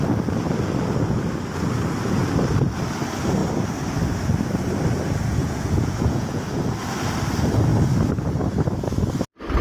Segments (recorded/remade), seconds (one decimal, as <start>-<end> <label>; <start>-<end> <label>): 0.0-5.4 recorded; 5.4-6.6 remade; 6.6-9.6 recorded